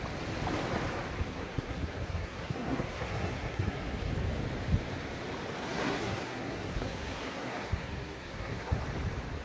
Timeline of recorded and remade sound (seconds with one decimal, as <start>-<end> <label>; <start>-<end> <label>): 0.0-1.3 recorded; 1.3-4.1 remade; 4.1-5.6 recorded; 5.6-8.8 remade; 8.8-9.4 recorded